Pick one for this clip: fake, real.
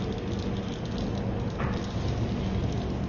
real